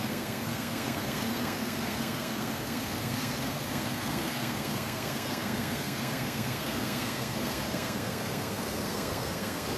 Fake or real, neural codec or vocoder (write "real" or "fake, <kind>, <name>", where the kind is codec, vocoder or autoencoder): fake, codec, SNAC